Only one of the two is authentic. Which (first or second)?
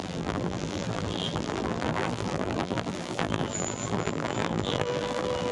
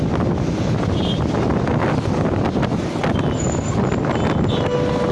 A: second